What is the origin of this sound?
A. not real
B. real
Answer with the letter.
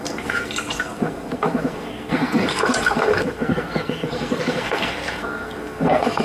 A